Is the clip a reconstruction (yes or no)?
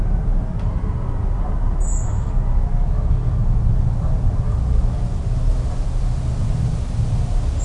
no